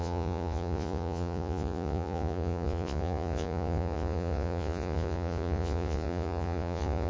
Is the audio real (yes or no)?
no